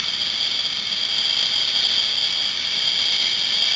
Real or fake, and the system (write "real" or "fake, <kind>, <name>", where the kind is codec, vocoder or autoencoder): real